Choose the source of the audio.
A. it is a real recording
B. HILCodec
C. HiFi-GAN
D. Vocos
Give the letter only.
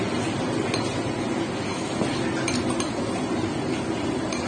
A